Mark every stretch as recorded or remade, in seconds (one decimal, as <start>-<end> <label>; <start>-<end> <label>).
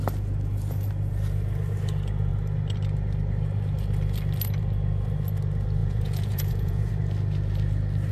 0.0-5.8 recorded; 5.8-6.9 remade; 6.9-8.1 recorded